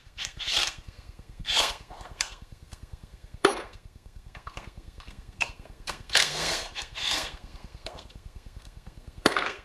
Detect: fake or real fake